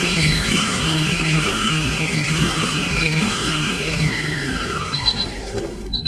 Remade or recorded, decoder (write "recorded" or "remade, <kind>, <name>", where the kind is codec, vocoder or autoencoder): remade, codec, SNAC